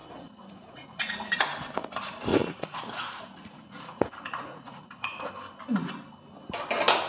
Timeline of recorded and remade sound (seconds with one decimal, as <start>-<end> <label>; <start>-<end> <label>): 0.0-1.4 remade; 1.4-2.3 recorded; 2.3-5.3 remade; 5.3-7.1 recorded